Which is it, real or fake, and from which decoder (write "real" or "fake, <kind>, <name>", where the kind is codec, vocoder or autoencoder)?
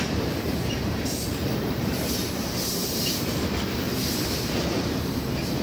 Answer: fake, vocoder, BigVGAN v2